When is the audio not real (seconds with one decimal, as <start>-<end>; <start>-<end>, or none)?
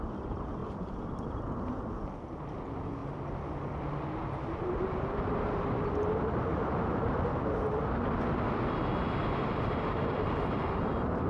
0.6-1.4; 9.2-10.9